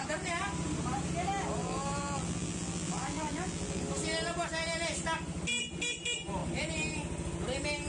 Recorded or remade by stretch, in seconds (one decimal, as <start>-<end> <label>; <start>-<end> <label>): 0.0-1.6 recorded; 1.6-3.8 remade; 3.8-7.9 recorded